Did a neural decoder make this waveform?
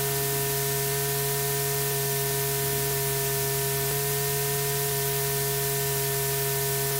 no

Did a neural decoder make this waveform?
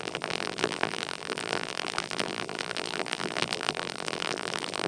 yes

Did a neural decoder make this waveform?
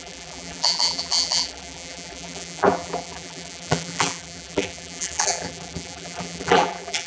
yes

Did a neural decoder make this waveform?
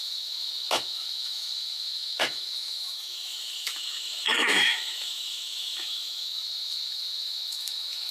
yes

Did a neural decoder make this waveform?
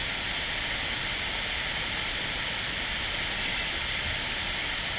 no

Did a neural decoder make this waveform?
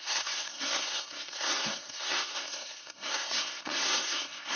yes